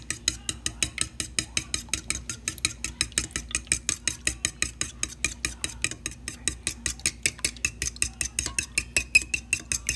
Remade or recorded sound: recorded